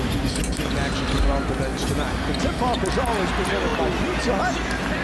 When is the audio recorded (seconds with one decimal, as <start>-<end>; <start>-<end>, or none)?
0.0-5.0